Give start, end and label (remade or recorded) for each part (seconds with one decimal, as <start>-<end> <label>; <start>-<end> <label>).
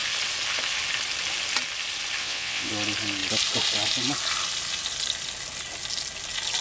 0.0-2.2 recorded; 2.2-2.7 remade; 2.7-6.6 recorded